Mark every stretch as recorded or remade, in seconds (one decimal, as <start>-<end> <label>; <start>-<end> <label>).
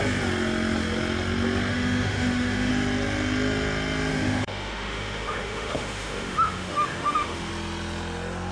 0.0-1.7 recorded; 1.7-2.7 remade; 2.7-4.1 recorded; 4.1-7.5 remade; 7.5-8.5 recorded